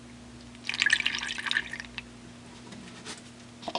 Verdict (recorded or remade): recorded